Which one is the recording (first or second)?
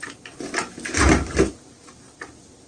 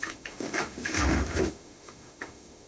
first